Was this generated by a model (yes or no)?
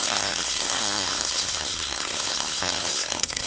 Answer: yes